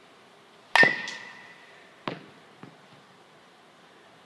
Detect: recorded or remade recorded